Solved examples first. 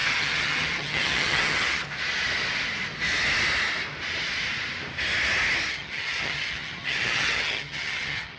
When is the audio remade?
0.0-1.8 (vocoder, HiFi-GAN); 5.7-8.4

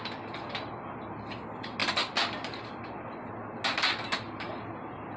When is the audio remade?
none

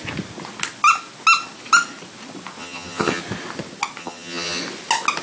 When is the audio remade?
2.6-3.2 (vocoder, HiFi-GAN); 4.0-4.6

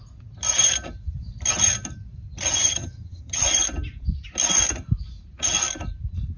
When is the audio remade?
2.6-3.4 (vocoder, HiFi-GAN)

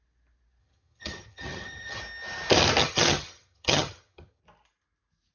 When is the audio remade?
0.6-2.0 (vocoder, HiFi-GAN); 2.8-4.4

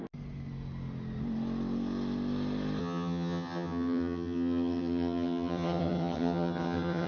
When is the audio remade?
2.8-7.1 (vocoder, HiFi-GAN)

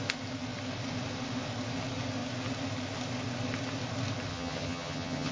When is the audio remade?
4.3-5.3 (vocoder, HiFi-GAN)